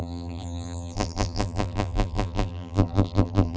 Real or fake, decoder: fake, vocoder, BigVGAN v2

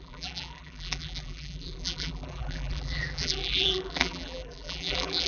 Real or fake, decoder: fake, vocoder, BigVGAN v2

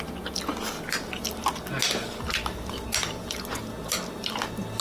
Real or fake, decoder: real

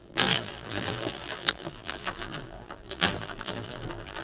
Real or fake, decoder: fake, vocoder, BigVGAN v2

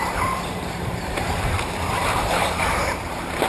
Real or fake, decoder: fake, vocoder, BigVGAN v2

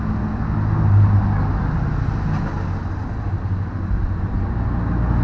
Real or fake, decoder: real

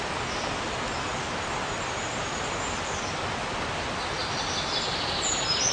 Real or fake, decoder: real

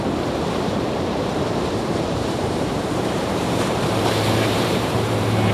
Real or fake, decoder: fake, vocoder, BigVGAN v2